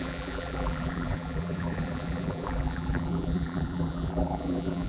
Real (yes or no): no